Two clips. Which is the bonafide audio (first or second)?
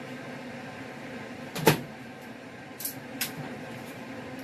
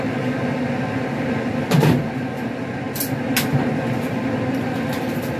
second